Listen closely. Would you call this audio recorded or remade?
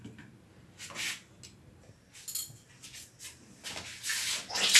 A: recorded